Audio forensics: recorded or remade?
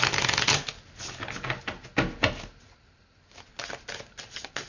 recorded